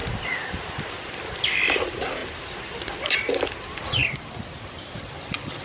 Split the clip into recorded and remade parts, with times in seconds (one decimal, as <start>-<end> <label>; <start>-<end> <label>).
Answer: 0.0-0.6 recorded; 0.6-4.0 remade; 4.0-5.1 recorded; 5.1-5.6 remade